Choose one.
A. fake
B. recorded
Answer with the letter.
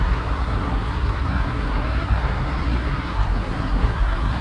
A